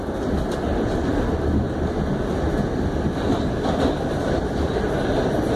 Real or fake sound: real